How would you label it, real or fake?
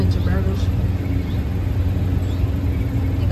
real